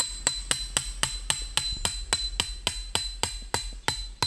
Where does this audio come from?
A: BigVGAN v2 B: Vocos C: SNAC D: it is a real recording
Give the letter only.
D